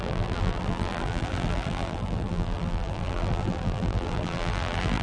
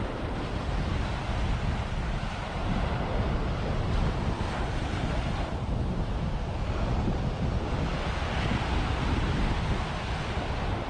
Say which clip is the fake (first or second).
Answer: first